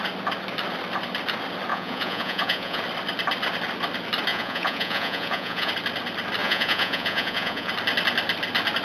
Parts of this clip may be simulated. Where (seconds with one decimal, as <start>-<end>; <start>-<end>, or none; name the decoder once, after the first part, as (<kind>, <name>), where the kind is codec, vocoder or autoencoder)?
1.7-2.8 (vocoder, Vocos); 4.3-5.7; 6.4-7.7